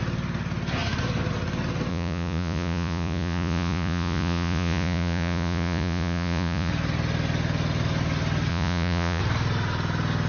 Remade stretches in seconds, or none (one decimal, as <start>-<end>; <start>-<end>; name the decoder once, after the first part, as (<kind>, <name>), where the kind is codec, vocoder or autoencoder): 1.9-6.7 (vocoder, Vocos); 8.5-9.2